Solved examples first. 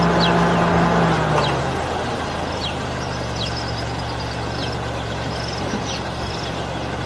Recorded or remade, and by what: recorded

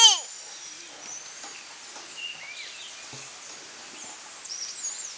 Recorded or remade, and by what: recorded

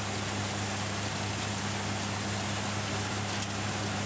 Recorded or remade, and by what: recorded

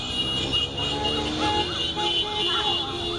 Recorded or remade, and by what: recorded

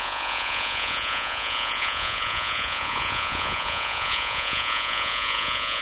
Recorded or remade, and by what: remade, vocoder, Vocos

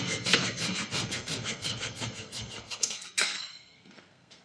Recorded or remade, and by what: remade, codec, SNAC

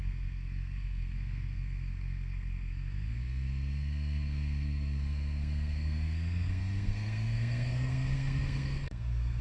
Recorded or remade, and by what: remade, codec, SNAC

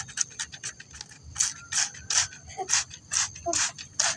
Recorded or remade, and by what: recorded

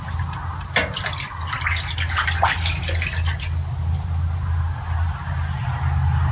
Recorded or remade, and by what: recorded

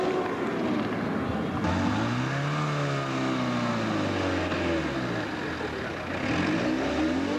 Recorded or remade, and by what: recorded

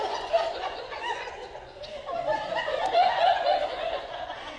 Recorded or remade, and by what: remade, vocoder, Vocos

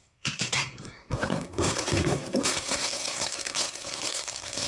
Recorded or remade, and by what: remade, codec, SNAC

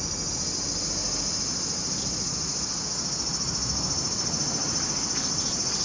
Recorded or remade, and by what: recorded